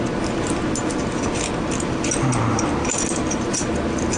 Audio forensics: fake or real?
real